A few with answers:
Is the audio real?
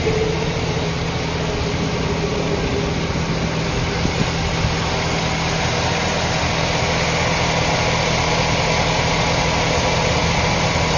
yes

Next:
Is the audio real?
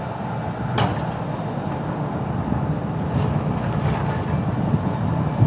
yes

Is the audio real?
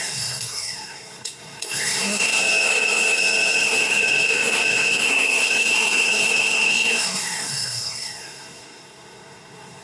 no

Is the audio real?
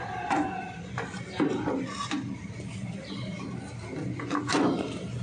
yes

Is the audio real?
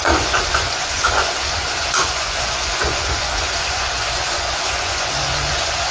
no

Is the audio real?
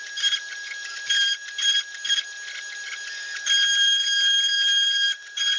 yes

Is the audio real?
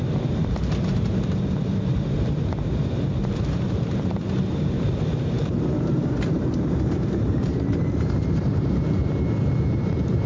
no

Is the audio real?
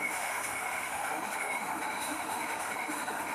no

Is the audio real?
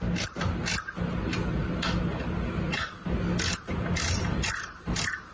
yes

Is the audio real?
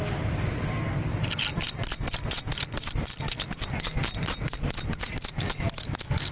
yes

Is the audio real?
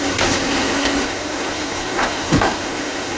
no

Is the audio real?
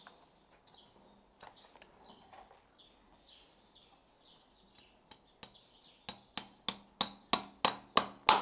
yes